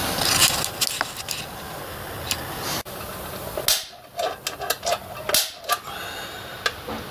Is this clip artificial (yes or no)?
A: no